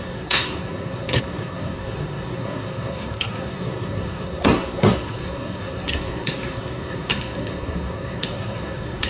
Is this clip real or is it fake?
fake